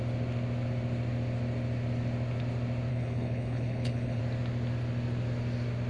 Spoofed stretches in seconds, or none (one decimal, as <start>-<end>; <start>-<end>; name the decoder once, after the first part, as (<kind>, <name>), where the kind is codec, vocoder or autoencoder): 2.9-4.2 (codec, HILCodec)